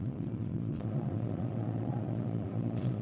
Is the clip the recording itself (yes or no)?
no